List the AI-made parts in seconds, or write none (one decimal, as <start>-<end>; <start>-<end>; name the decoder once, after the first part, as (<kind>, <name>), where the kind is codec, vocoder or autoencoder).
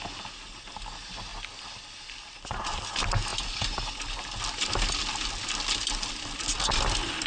none